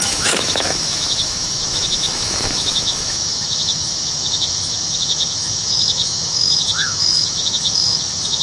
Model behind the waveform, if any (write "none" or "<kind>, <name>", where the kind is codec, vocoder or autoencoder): autoencoder, DAC-VAE